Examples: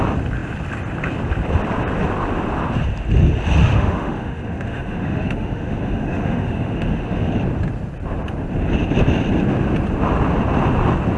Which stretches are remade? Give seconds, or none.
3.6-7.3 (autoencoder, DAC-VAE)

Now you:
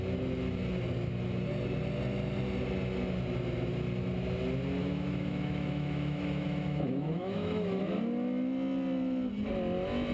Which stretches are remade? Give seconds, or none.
4.8-7.8 (autoencoder, DAC-VAE)

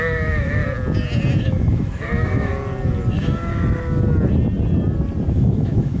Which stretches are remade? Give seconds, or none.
0.0-0.6 (autoencoder, DAC-VAE); 1.4-2.5; 3.1-3.5; 5.3-6.0

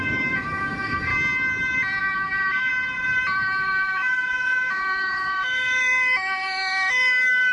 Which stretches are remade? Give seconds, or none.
0.0-1.1 (autoencoder, DAC-VAE); 2.0-2.7; 3.6-7.5

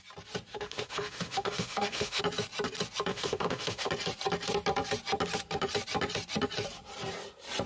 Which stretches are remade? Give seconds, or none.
0.5-2.2 (autoencoder, DAC-VAE); 3.1-3.9

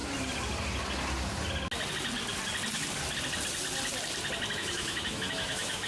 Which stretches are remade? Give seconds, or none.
4.6-5.9 (autoencoder, DAC-VAE)

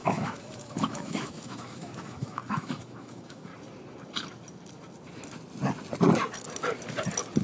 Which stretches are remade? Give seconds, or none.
0.0-3.5 (autoencoder, DAC-VAE)